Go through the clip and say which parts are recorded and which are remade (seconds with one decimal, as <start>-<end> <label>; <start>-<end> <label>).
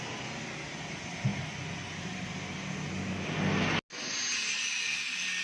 0.0-5.4 recorded